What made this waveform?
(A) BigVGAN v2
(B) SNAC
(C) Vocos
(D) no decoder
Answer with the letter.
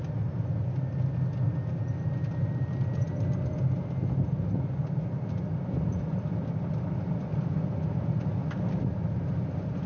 D